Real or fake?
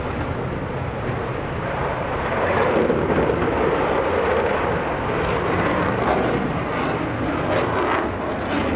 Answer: real